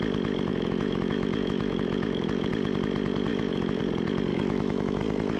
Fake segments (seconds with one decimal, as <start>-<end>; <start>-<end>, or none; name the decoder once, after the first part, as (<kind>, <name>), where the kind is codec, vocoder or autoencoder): 0.5-2.5 (autoencoder, DAC-VAE); 3.3-3.8; 4.3-5.0